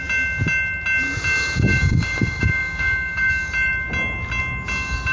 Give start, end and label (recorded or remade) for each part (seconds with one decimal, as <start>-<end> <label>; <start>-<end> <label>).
0.0-1.7 recorded; 1.7-3.3 remade; 3.3-5.1 recorded